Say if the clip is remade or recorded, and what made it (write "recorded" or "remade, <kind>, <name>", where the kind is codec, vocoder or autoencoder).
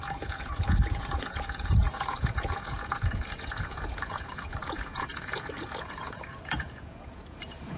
remade, vocoder, Vocos